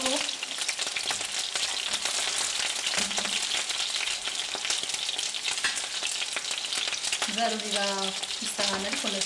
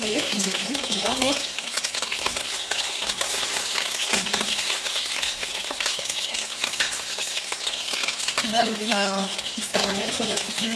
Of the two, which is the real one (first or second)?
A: first